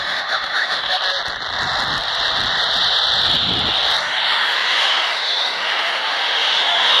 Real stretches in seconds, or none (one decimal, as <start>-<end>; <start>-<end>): 1.0-4.0